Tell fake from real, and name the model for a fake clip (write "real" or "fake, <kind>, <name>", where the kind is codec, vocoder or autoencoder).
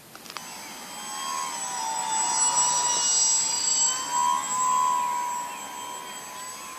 real